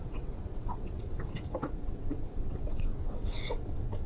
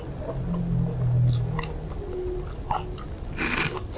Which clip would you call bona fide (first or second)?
second